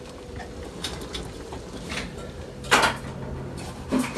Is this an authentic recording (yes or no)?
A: yes